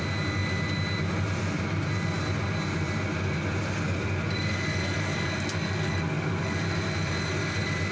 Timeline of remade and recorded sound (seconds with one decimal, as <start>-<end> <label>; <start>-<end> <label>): 0.0-7.9 recorded